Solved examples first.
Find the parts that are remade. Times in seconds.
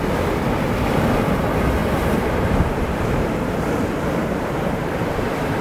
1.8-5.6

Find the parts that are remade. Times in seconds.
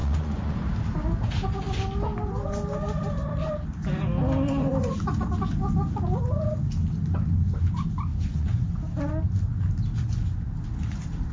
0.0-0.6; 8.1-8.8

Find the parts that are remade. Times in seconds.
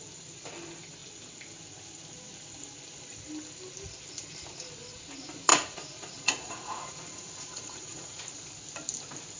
5.5-8.2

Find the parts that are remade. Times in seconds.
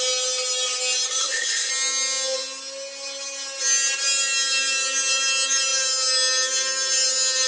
1.2-1.7